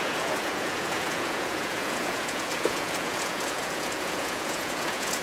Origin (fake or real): fake